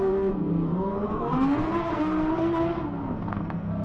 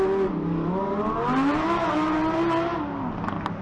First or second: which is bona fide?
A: second